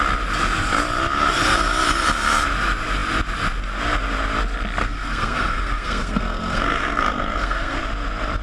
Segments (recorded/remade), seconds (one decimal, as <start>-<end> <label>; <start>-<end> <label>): 0.0-4.8 recorded; 4.8-7.8 remade; 7.8-8.4 recorded